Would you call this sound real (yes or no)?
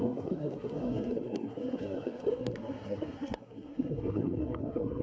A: no